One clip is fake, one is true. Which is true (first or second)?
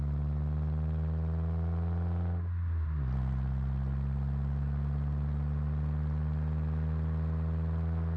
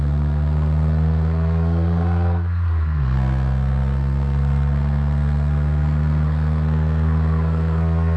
first